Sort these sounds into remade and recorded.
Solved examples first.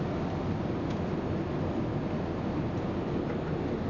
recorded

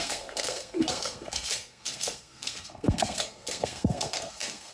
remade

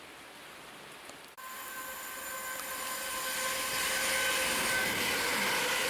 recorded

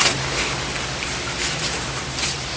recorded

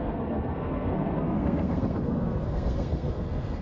remade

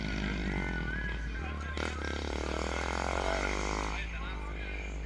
recorded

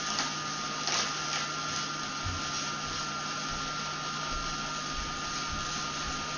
recorded